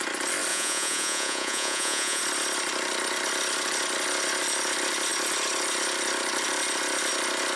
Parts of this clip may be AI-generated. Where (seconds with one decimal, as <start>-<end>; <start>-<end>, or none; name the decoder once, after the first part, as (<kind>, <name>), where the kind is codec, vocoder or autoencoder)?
0.5-2.2 (vocoder, Vocos)